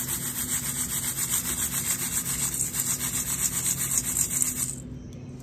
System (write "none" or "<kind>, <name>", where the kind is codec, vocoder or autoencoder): none